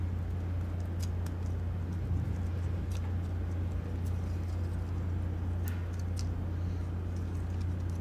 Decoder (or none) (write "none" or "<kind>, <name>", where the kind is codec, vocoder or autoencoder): none